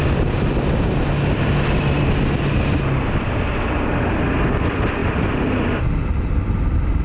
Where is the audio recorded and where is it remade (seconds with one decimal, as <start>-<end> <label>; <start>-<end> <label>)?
0.0-7.0 recorded